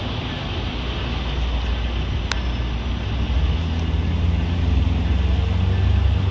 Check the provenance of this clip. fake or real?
real